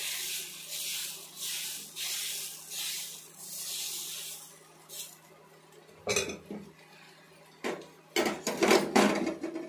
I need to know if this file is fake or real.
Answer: real